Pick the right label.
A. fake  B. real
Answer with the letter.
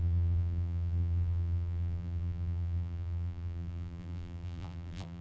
A